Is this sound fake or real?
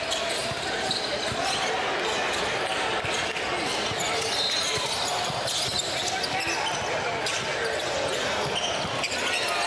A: real